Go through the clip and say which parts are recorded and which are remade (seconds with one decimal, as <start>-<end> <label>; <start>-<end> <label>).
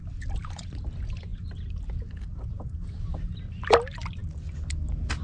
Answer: 0.0-5.2 recorded